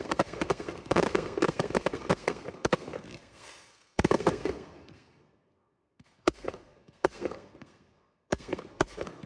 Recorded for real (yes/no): no